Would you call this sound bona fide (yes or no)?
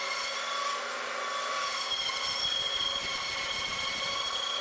yes